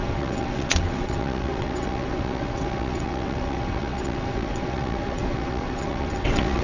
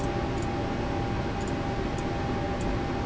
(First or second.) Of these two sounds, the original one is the second